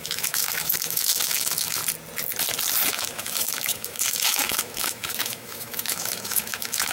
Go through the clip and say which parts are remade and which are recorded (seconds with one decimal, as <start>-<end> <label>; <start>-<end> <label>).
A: 0.0-1.8 remade; 1.8-2.9 recorded; 2.9-6.9 remade